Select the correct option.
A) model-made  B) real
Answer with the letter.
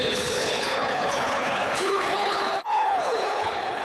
A